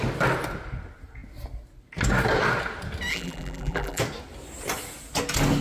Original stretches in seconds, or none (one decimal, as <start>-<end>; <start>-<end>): 0.0-3.1; 4.0-5.6